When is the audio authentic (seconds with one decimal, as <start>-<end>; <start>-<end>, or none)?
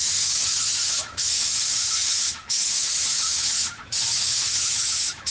none